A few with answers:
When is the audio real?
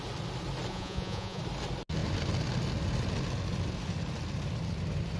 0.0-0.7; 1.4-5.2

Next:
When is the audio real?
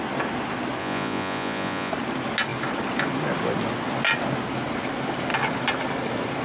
0.0-0.8; 1.9-6.4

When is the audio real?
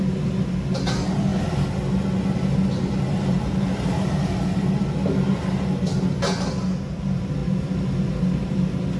0.0-9.0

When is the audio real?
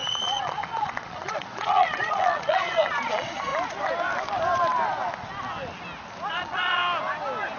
3.5-6.3; 6.8-7.6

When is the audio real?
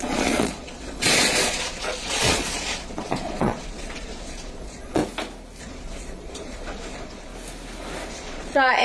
5.0-5.6; 7.3-8.1